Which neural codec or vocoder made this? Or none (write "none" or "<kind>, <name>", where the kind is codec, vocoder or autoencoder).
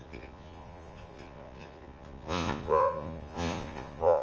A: vocoder, Vocos